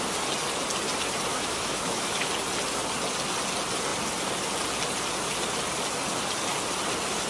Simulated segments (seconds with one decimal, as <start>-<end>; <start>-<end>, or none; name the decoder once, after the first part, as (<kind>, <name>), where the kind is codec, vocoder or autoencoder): 1.3-2.3 (autoencoder, DAC-VAE)